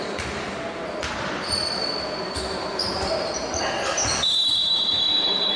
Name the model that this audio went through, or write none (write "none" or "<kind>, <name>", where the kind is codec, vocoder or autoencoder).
vocoder, BigVGAN v2